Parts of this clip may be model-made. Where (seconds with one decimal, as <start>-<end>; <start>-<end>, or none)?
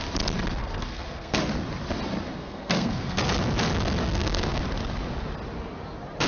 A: 0.6-1.4; 2.4-3.2; 4.0-4.6